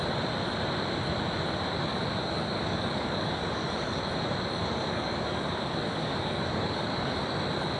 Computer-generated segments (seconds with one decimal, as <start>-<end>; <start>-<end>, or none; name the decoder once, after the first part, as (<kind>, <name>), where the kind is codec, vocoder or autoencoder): 1.9-4.0 (codec, DAC); 4.6-7.2